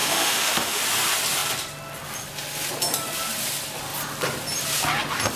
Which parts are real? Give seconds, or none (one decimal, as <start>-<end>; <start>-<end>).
0.8-5.4